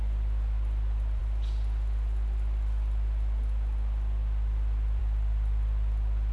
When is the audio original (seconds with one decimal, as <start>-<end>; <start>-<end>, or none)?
0.0-6.3